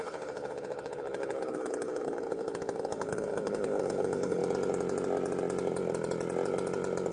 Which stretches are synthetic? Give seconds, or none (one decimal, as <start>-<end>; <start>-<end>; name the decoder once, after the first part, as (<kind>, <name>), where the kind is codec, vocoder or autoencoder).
0.0-4.4 (codec, HILCodec)